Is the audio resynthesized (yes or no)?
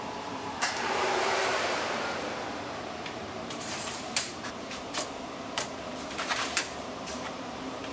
yes